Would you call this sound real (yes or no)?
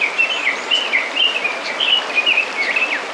yes